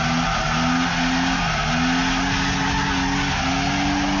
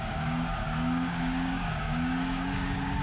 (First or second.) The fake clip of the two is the second